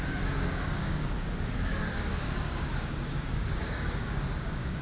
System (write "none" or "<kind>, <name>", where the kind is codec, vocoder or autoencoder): codec, DAC